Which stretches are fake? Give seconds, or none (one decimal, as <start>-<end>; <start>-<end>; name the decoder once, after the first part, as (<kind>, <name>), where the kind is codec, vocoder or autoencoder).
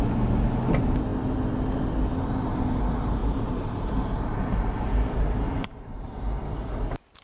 3.2-6.2 (vocoder, BigVGAN v2)